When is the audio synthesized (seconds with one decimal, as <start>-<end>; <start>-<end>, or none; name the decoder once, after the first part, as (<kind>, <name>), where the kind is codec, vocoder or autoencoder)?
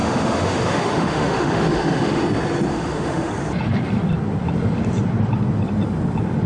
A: 0.0-2.2 (autoencoder, DAC-VAE); 2.7-3.3